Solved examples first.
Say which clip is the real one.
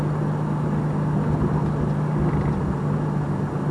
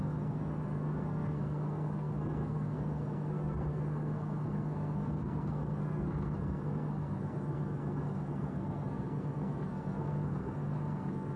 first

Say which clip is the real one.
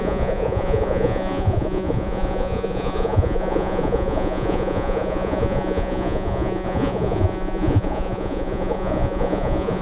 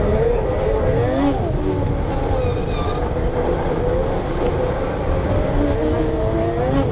second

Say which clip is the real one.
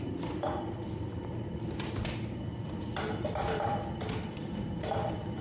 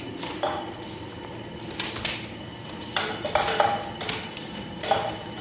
second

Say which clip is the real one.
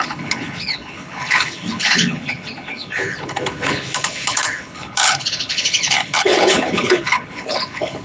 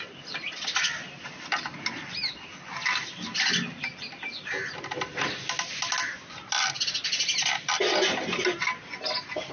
second